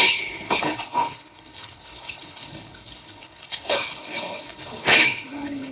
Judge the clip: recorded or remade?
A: remade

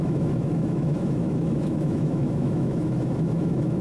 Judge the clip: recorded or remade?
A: remade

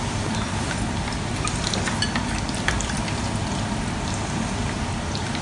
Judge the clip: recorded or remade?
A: recorded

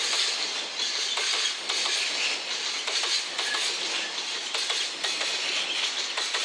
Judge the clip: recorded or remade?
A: recorded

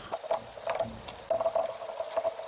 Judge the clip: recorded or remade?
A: recorded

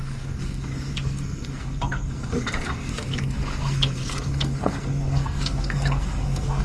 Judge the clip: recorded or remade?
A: remade